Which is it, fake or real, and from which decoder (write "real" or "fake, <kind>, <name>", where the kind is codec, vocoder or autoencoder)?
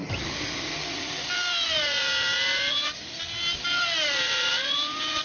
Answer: real